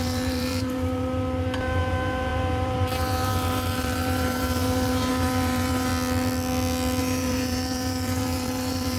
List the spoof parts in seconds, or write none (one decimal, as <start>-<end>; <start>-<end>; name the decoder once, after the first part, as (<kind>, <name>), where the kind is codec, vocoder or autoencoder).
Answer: 0.0-5.9 (vocoder, BigVGAN v2); 7.0-9.0